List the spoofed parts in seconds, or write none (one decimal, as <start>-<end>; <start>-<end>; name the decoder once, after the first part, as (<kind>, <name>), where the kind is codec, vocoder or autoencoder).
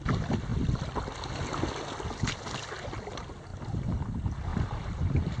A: 4.5-5.4 (vocoder, BigVGAN v2)